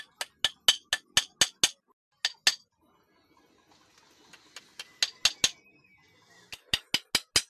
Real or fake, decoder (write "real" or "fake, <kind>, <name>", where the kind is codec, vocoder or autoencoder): real